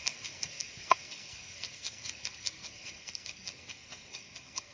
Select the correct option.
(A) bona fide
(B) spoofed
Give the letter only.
B